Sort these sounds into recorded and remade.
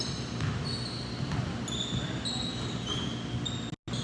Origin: recorded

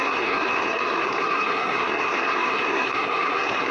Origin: remade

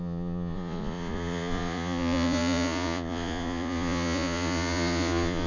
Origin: remade